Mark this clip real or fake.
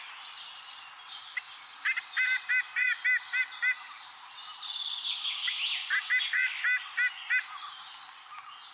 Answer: real